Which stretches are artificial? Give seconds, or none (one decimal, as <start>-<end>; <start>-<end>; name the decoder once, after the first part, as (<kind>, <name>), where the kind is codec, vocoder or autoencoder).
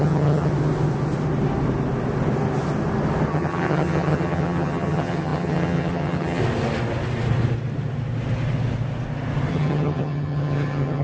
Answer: 0.0-0.5 (vocoder, HiFi-GAN); 3.3-6.4; 9.5-11.0